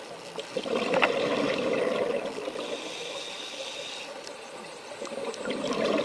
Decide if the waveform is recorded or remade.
recorded